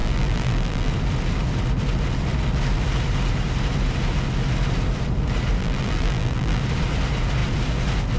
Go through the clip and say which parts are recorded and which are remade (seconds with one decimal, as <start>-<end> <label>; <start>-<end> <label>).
0.0-0.9 remade; 0.9-5.6 recorded; 5.6-6.6 remade; 6.6-8.2 recorded